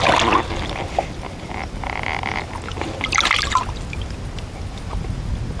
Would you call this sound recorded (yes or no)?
yes